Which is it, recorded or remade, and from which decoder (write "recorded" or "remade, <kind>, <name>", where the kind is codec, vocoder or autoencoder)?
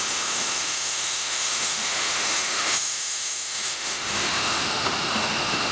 remade, autoencoder, DAC-VAE